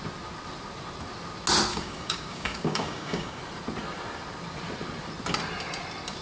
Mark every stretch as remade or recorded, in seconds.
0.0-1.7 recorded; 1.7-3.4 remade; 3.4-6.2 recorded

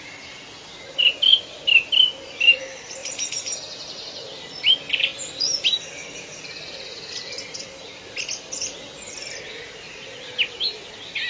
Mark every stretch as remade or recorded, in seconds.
0.0-1.3 recorded; 1.3-2.6 remade; 2.6-3.0 recorded; 3.0-3.6 remade; 3.6-5.1 recorded; 5.1-9.1 remade; 9.1-11.3 recorded